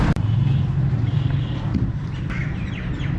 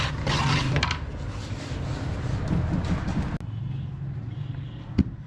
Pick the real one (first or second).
second